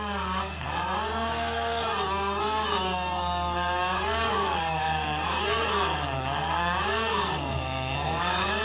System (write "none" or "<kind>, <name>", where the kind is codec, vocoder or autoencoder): codec, SNAC